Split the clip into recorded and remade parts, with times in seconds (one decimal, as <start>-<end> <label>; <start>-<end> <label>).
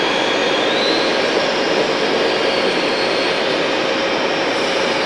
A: 0.0-5.1 recorded